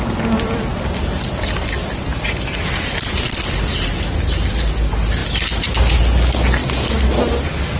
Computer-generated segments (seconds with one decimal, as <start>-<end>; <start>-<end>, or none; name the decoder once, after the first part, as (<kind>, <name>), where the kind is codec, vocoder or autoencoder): none